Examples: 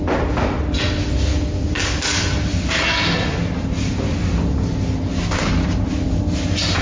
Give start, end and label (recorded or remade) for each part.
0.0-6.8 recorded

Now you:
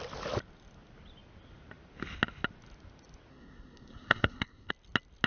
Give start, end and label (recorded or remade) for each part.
0.0-3.3 recorded; 3.3-4.7 remade; 4.7-5.3 recorded

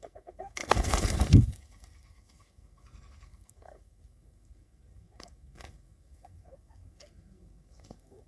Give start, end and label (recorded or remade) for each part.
0.0-8.3 remade

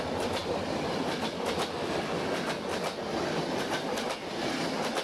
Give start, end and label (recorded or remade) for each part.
0.0-5.0 recorded

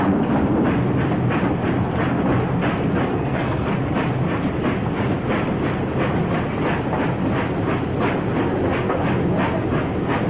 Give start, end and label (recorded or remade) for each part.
0.0-3.1 recorded; 3.1-3.7 remade; 3.7-10.3 recorded

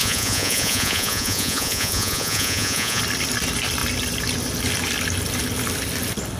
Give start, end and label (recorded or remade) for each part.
0.0-3.0 remade; 3.0-6.4 recorded

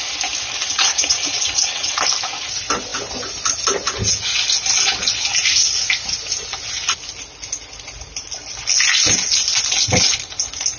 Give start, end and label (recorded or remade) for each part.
0.0-0.7 recorded; 0.7-2.0 remade; 2.0-10.8 recorded

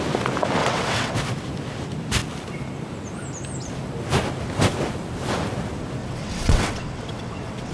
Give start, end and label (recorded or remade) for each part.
0.0-0.6 recorded; 0.6-1.2 remade; 1.2-6.0 recorded; 6.0-7.7 remade